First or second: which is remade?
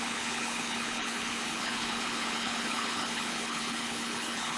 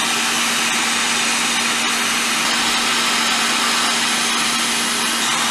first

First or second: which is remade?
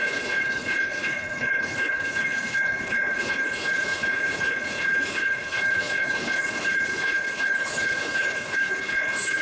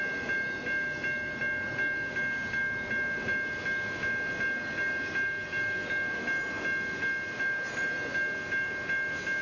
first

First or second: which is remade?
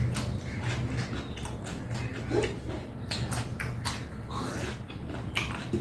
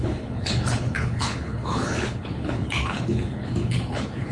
second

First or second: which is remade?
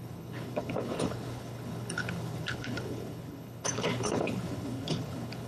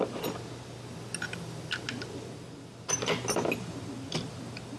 first